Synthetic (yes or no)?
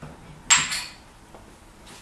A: no